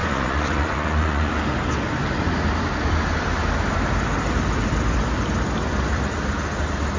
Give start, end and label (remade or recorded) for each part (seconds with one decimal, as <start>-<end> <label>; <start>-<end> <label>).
0.0-1.3 remade; 1.3-7.0 recorded